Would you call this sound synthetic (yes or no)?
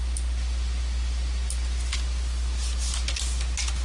no